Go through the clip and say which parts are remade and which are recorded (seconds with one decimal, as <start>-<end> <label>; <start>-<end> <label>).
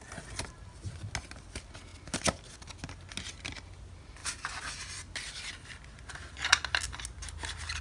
0.0-7.8 recorded